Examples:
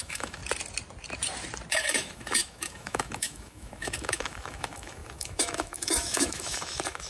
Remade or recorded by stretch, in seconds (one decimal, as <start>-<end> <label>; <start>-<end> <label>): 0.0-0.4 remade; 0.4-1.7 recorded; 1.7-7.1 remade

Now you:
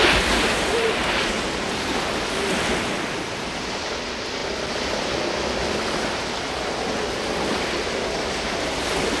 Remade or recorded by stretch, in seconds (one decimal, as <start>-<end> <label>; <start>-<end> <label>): 0.0-9.2 recorded

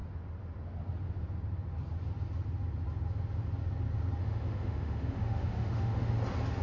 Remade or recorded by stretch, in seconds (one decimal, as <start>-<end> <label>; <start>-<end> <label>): 0.0-4.2 recorded; 4.2-6.1 remade; 6.1-6.6 recorded